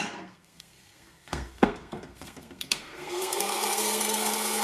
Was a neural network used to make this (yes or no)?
yes